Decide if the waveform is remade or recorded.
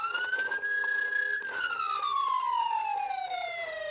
recorded